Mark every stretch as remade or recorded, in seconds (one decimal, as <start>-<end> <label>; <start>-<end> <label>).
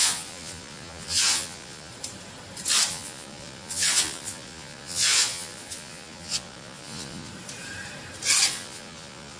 0.0-1.9 remade; 1.9-2.9 recorded; 2.9-7.3 remade; 7.3-8.5 recorded; 8.5-9.4 remade